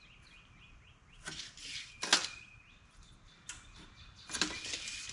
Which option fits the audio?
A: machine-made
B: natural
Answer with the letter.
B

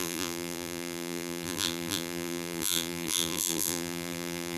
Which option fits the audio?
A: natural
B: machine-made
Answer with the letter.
B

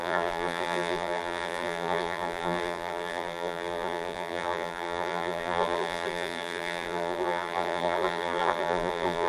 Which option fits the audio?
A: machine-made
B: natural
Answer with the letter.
A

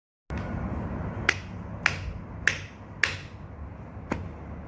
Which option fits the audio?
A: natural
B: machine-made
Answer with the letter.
A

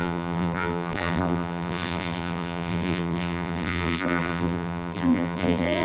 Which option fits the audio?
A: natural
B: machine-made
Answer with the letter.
B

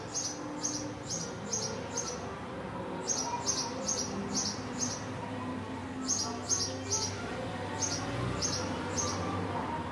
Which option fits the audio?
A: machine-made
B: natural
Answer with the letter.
B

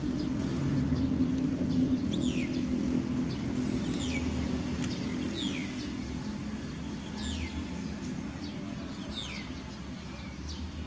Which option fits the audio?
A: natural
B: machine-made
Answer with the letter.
A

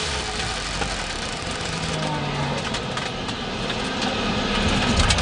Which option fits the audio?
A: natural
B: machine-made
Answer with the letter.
A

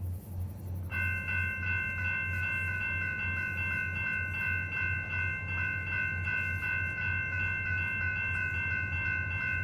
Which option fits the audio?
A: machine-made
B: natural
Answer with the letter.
B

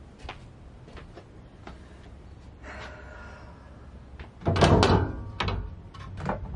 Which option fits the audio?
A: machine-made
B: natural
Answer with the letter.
B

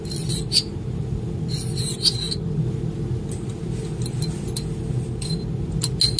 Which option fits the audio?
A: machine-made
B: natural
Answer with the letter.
B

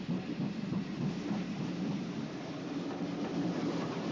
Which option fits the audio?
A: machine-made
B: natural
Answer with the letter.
B